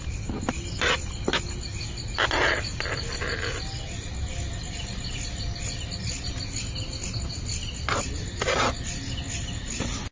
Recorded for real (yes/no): yes